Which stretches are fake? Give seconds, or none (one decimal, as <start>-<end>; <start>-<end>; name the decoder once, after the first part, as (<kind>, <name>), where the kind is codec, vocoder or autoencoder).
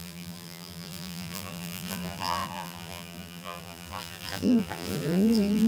0.0-5.7 (vocoder, BigVGAN v2)